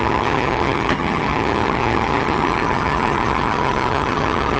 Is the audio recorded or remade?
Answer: remade